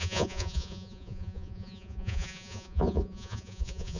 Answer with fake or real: fake